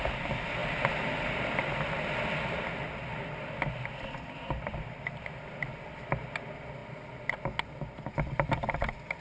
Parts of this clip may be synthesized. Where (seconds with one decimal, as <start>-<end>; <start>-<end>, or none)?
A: none